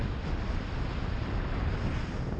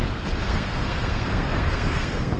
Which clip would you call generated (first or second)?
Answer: second